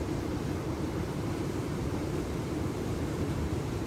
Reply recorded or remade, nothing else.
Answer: remade